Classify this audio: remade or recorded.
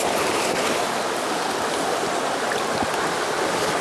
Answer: recorded